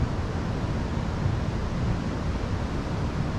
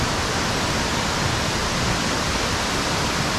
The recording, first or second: first